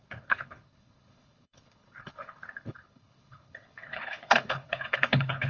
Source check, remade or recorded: remade